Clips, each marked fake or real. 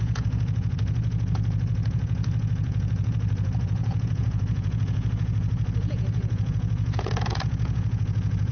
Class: fake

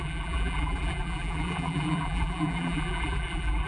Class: fake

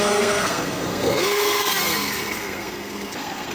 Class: fake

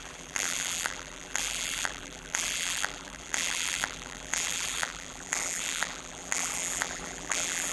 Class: fake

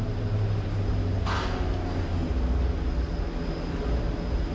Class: real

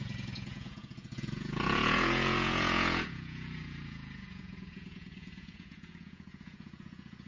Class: fake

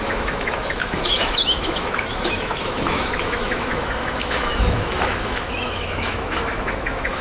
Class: fake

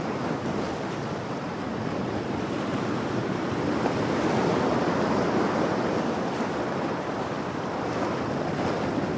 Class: real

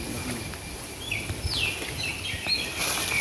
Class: real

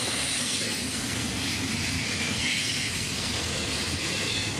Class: fake